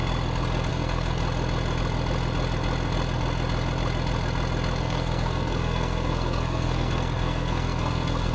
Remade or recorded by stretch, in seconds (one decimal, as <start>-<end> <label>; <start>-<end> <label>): 0.0-0.7 recorded; 0.7-1.2 remade; 1.2-4.8 recorded; 4.8-8.3 remade